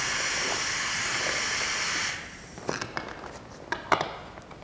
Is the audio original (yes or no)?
yes